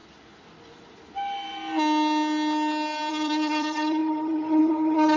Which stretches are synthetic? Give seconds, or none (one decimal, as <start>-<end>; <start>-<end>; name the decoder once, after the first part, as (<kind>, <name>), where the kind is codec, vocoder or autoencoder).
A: 3.1-5.2 (vocoder, HiFi-GAN)